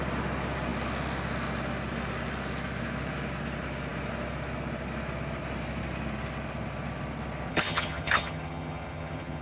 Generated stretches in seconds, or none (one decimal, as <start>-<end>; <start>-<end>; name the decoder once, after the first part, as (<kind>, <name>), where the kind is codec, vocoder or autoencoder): 7.5-9.4 (vocoder, HiFi-GAN)